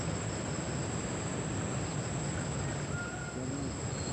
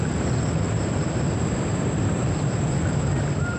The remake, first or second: second